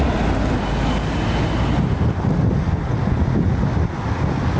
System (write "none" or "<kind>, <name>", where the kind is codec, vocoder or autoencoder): none